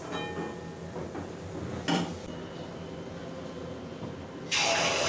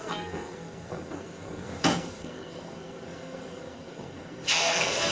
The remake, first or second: second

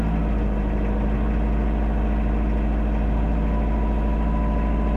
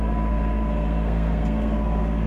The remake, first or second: second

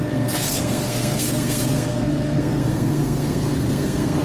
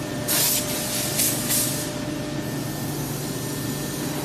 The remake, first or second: first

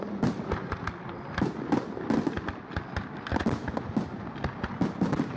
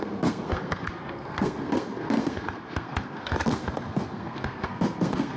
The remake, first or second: second